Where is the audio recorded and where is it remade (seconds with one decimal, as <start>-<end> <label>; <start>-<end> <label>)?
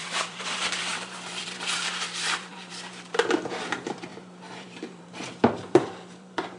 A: 0.0-6.6 remade